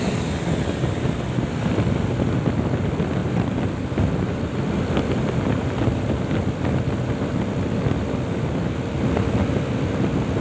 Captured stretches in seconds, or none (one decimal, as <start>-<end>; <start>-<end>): 0.0-10.4